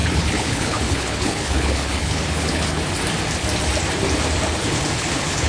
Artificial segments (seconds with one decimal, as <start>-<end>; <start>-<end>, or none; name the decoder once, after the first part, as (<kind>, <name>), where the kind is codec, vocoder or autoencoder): 0.0-2.8 (codec, HILCodec); 4.6-5.5